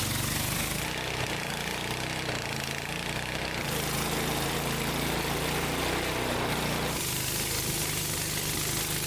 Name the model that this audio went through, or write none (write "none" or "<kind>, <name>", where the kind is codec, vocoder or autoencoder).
none